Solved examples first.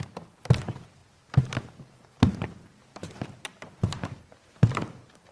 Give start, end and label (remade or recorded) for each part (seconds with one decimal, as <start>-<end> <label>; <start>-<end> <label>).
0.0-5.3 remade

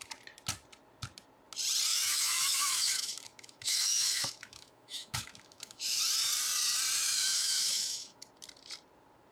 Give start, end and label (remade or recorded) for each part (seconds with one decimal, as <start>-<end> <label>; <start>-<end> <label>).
0.0-1.9 recorded; 1.9-6.0 remade; 6.0-7.0 recorded; 7.0-8.2 remade; 8.2-9.3 recorded

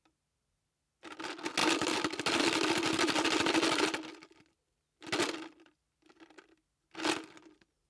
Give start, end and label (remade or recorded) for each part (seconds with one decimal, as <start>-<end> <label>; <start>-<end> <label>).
0.0-7.9 recorded

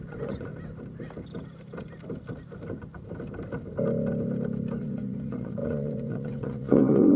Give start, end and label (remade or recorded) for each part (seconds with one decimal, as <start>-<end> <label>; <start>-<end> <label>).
0.0-0.5 remade; 0.5-4.8 recorded; 4.8-7.2 remade

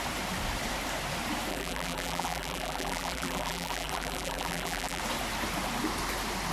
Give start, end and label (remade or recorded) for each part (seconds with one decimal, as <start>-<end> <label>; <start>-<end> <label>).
0.0-1.5 recorded; 1.5-5.0 remade; 5.0-6.5 recorded

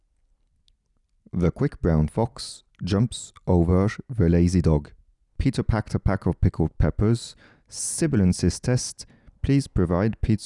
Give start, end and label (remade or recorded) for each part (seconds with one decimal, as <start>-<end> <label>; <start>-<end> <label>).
0.0-10.5 recorded

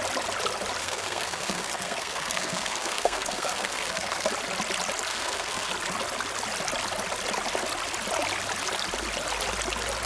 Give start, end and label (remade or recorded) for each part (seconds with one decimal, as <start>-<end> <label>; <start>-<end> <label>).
0.0-0.8 recorded; 0.8-4.3 remade; 4.3-5.1 recorded; 5.1-5.7 remade; 5.7-10.0 recorded

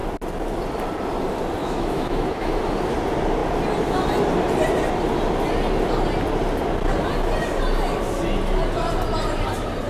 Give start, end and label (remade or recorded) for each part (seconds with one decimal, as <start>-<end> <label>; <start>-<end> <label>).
0.0-1.6 recorded; 1.6-2.6 remade; 2.6-9.9 recorded